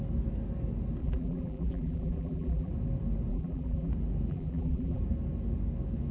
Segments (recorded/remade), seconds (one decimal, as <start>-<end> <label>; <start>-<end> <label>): 0.0-1.0 recorded; 1.0-2.7 remade; 2.7-3.3 recorded; 3.3-3.9 remade; 3.9-4.3 recorded; 4.3-5.0 remade; 5.0-6.1 recorded